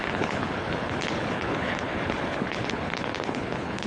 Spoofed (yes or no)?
yes